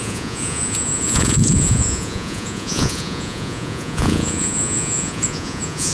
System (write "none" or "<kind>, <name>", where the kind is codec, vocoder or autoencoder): vocoder, Vocos